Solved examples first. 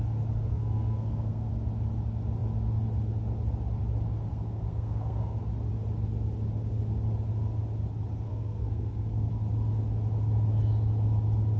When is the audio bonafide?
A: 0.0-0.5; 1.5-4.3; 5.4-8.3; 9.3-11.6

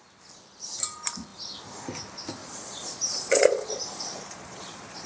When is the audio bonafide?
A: 0.0-2.4